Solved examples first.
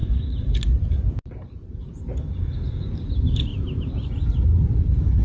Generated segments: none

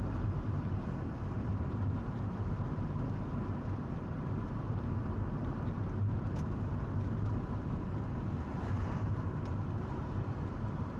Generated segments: 0.0-11.0

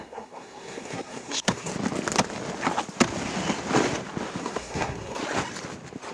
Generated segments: 0.0-1.7; 4.4-5.2

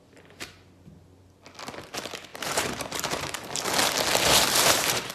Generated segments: 2.3-3.6; 4.1-5.1